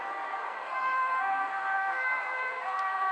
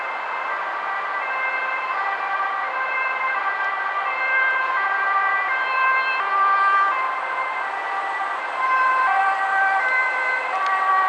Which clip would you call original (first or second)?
second